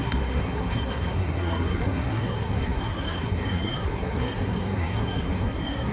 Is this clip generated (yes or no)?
yes